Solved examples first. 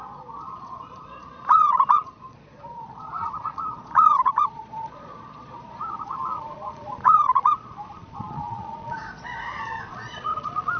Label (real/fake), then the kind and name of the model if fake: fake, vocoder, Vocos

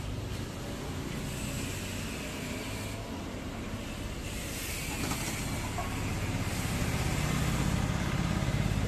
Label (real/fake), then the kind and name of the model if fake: real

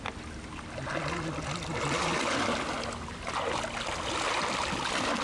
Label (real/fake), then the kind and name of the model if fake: real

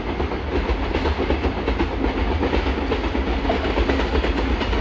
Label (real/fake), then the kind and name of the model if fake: real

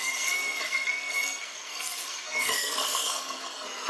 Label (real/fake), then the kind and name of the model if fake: fake, codec, SNAC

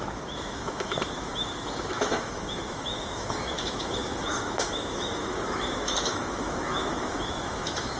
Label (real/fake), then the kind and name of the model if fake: fake, autoencoder, DAC-VAE